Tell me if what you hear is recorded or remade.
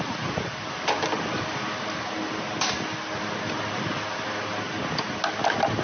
recorded